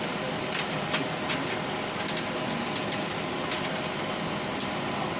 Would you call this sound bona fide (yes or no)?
yes